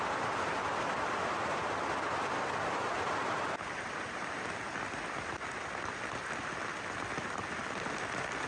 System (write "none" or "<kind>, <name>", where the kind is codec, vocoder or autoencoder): none